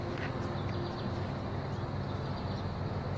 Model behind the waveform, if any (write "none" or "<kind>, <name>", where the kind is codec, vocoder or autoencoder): none